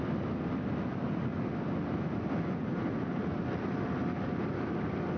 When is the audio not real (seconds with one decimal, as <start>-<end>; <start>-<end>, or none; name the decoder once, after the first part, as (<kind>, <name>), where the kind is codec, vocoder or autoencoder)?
none

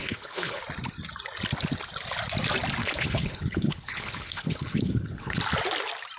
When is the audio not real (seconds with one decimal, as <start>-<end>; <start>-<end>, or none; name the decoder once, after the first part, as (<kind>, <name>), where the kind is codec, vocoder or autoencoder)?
0.0-0.6 (codec, HILCodec); 2.8-5.4